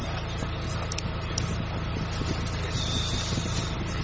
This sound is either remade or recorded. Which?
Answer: recorded